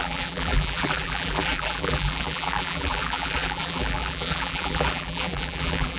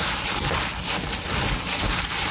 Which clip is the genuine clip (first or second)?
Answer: second